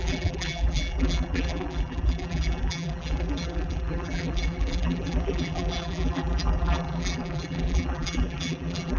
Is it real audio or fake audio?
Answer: fake